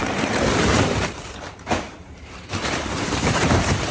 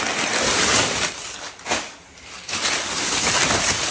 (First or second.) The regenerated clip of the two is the first